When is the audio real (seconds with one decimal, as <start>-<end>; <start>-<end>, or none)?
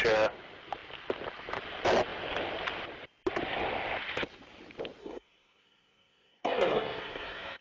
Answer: 0.0-5.0